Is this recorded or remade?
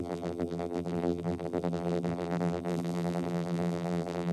remade